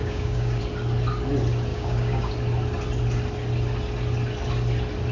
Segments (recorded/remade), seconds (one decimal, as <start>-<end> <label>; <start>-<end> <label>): 0.0-0.6 remade; 0.6-1.7 recorded; 1.7-2.3 remade; 2.3-5.1 recorded